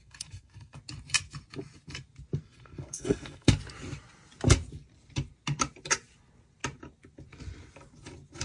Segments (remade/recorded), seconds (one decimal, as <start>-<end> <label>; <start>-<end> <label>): 0.0-0.8 remade; 0.8-2.4 recorded; 2.4-3.5 remade; 3.5-8.4 recorded